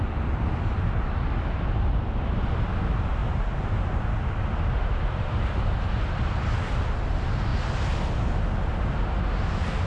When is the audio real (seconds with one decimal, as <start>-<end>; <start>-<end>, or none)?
3.2-4.3; 7.5-9.9